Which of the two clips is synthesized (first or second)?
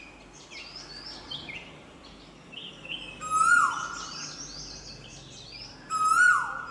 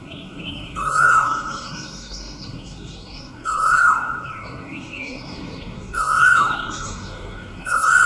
second